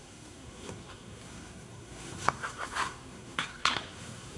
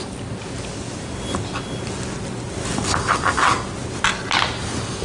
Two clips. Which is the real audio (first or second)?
second